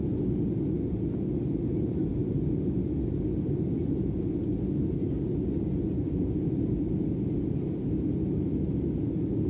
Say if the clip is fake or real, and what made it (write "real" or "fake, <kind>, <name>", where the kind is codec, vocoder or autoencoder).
real